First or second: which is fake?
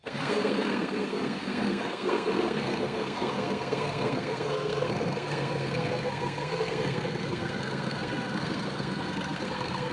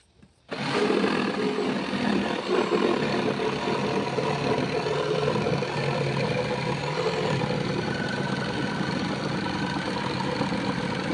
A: first